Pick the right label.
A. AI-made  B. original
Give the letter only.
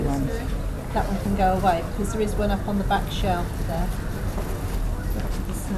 B